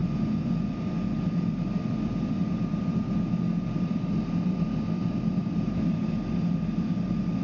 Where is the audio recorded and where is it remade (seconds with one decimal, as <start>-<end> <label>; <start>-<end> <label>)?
0.0-0.7 remade; 0.7-7.4 recorded